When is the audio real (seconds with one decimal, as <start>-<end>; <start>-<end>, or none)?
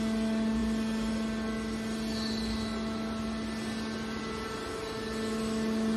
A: 0.0-6.0